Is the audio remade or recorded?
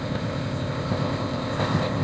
remade